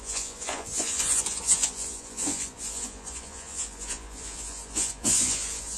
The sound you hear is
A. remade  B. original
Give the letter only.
A